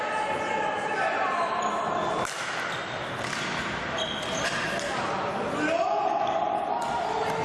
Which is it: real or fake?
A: real